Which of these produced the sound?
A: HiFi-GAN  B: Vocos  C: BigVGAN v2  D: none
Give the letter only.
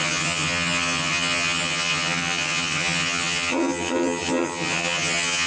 A